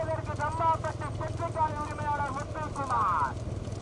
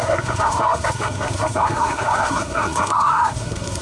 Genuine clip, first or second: first